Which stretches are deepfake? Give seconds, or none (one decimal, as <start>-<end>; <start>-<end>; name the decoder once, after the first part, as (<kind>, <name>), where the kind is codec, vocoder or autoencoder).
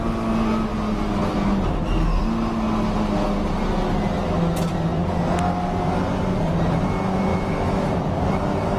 7.3-7.9 (autoencoder, DAC-VAE)